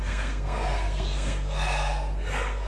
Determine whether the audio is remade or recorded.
remade